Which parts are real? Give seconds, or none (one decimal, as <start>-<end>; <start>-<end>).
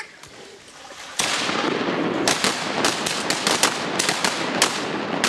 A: 0.0-5.3